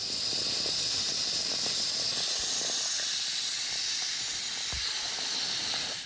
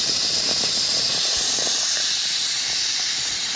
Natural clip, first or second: first